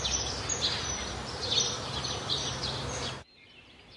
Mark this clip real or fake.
fake